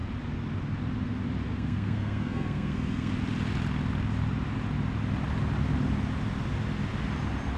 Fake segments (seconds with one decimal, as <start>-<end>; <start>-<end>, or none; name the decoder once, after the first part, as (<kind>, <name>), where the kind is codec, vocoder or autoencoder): 1.5-3.1 (codec, SNAC)